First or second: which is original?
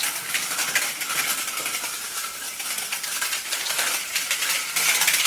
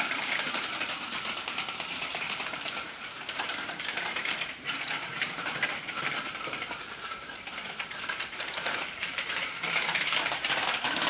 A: first